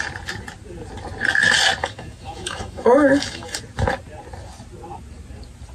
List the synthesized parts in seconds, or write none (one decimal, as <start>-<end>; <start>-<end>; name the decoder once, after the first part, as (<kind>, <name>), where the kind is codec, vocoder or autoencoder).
1.8-3.6 (autoencoder, DAC-VAE)